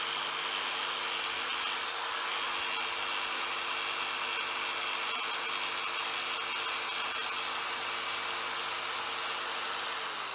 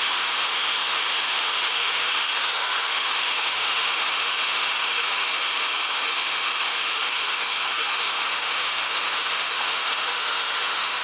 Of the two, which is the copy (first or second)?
second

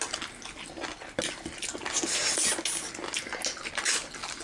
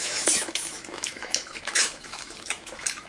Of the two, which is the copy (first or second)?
second